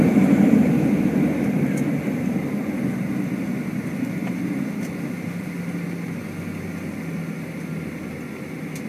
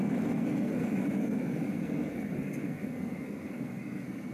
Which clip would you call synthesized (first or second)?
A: second